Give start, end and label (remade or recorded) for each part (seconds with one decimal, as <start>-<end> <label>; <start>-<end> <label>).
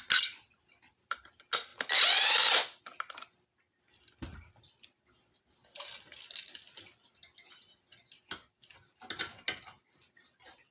0.0-10.7 recorded